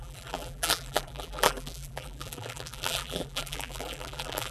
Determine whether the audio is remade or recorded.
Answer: remade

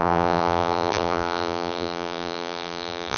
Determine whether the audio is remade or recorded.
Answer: remade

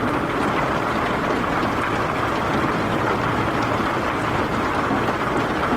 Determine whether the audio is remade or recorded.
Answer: recorded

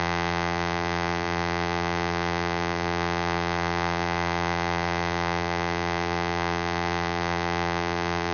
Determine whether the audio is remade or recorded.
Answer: remade